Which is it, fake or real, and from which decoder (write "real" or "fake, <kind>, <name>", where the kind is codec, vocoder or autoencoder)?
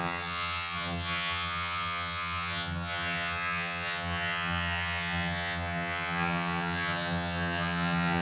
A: fake, vocoder, HiFi-GAN